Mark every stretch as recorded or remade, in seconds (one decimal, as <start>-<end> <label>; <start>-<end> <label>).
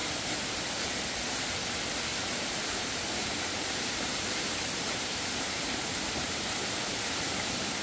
0.0-2.1 recorded; 2.1-6.6 remade; 6.6-7.8 recorded